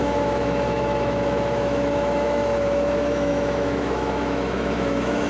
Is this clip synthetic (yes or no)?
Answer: yes